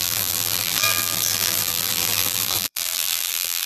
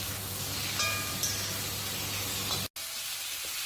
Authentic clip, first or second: second